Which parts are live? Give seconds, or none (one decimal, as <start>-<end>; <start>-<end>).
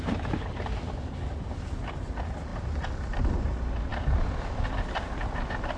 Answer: 0.0-5.8